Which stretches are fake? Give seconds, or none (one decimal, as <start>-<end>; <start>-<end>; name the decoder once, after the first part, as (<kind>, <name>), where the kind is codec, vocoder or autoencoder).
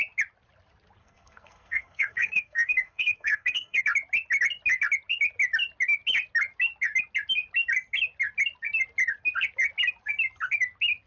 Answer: 1.0-3.8 (codec, SNAC)